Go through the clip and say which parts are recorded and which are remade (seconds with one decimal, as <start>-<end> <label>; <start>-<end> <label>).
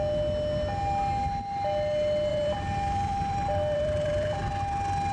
0.0-2.3 recorded; 2.3-4.5 remade; 4.5-5.1 recorded